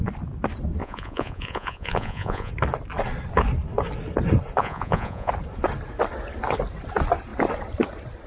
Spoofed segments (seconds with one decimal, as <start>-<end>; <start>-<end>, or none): 0.8-2.5; 4.6-5.3